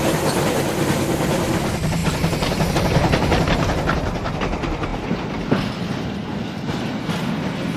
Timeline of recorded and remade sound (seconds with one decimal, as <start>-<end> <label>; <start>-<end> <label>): 0.0-7.8 recorded